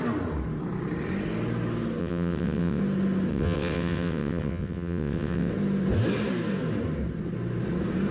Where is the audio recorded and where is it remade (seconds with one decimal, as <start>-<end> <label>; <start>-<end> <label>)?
0.0-2.0 recorded; 2.0-2.8 remade; 2.8-3.3 recorded; 3.3-5.5 remade; 5.5-8.1 recorded